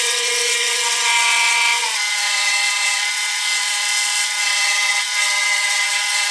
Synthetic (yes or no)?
yes